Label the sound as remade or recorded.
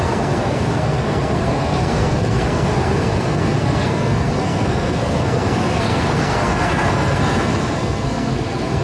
remade